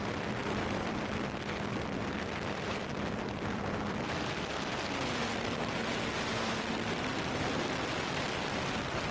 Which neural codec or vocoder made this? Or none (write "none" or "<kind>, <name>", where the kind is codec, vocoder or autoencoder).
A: vocoder, BigVGAN v2